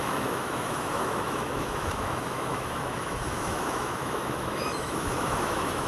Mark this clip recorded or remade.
remade